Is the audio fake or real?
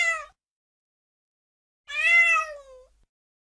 real